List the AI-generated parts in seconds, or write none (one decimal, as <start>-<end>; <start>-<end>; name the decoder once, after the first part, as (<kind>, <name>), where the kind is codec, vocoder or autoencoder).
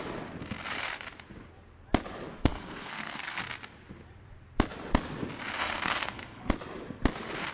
2.4-3.4 (codec, SNAC); 5.6-6.5